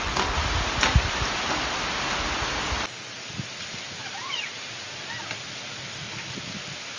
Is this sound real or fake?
real